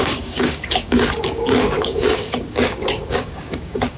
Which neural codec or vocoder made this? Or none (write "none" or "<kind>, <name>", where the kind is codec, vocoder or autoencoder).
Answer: codec, DAC